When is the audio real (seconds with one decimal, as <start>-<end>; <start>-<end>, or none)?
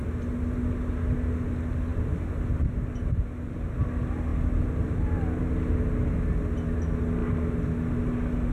0.0-8.5